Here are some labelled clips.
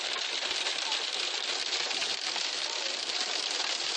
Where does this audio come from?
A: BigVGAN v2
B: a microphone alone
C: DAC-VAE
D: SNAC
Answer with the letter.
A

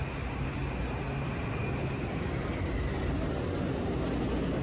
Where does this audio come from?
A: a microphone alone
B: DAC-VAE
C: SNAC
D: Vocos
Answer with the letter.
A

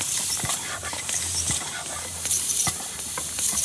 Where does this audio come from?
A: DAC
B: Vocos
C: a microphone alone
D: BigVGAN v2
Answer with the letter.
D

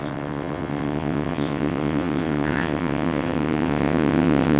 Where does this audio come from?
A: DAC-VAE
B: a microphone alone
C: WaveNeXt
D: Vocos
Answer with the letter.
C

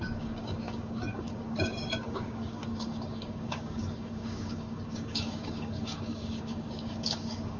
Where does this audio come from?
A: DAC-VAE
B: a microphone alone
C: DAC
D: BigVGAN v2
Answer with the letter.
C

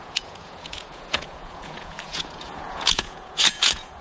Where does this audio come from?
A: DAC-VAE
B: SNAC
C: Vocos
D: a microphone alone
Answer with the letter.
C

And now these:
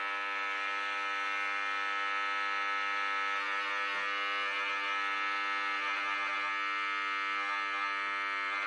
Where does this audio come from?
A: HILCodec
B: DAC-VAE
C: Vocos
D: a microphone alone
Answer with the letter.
D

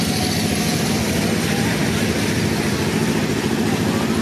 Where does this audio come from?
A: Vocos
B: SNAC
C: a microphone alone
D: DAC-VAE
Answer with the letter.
C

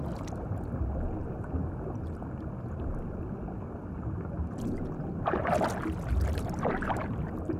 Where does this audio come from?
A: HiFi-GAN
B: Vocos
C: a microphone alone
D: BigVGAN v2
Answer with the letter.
C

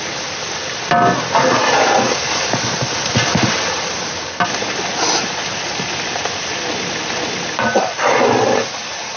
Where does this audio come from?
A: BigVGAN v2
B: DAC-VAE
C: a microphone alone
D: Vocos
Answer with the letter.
C